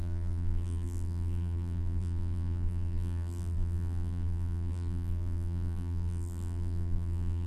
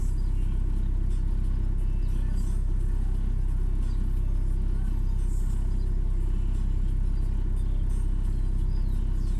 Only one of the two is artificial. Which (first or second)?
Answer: first